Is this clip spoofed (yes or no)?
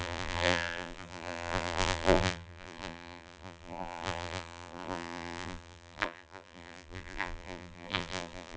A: yes